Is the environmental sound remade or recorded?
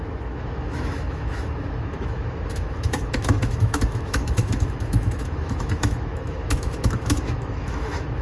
remade